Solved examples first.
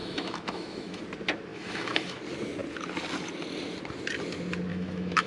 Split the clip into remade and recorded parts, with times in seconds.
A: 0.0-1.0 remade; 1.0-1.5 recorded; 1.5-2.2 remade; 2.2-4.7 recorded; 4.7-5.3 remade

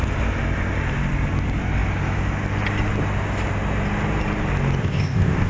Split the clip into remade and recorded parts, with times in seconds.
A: 0.0-4.8 recorded; 4.8-5.5 remade

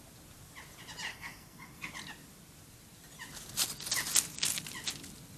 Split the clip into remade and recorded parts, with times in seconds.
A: 0.0-1.1 recorded; 1.1-1.9 remade; 1.9-5.4 recorded

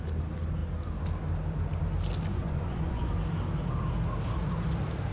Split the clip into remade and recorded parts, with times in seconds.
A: 0.0-2.3 recorded; 2.3-3.1 remade; 3.1-5.1 recorded

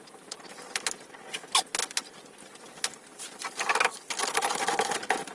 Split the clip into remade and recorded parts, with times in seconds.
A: 0.0-5.3 recorded